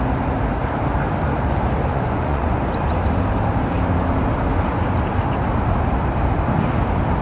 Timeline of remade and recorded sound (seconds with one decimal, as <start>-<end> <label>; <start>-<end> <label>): 0.0-1.9 recorded; 1.9-2.6 remade; 2.6-7.2 recorded